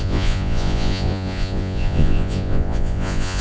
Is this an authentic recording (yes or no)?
no